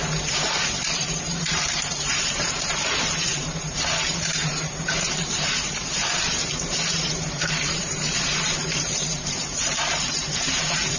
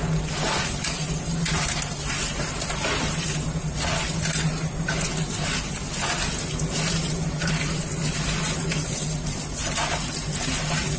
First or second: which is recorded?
second